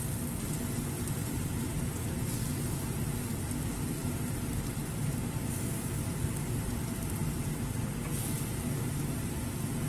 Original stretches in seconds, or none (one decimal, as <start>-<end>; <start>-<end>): 0.0-1.2; 1.9-9.9